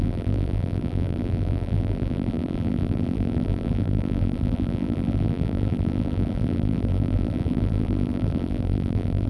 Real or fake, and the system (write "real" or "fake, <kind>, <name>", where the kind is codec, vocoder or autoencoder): fake, vocoder, BigVGAN v2